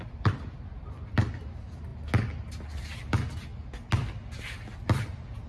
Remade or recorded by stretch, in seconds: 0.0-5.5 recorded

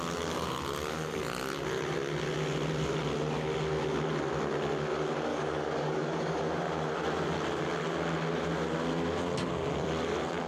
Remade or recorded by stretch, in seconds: 0.0-5.3 recorded; 5.3-6.4 remade; 6.4-10.5 recorded

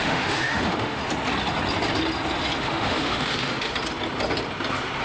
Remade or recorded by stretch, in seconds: 0.0-1.0 remade; 1.0-2.6 recorded; 2.6-3.7 remade; 3.7-5.0 recorded

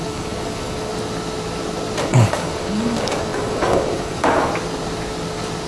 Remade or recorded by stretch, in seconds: 0.0-0.9 remade; 0.9-2.0 recorded; 2.0-4.5 remade; 4.5-5.7 recorded

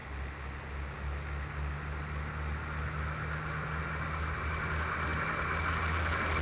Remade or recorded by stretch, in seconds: 0.0-6.4 recorded